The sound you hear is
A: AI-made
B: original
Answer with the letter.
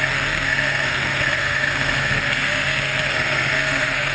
A